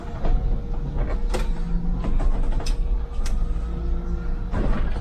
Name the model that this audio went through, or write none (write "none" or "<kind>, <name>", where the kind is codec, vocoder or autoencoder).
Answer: none